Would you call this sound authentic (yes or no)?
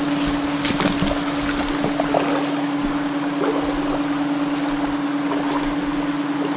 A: yes